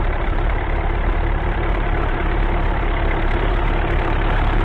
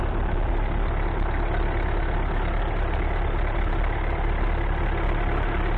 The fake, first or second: first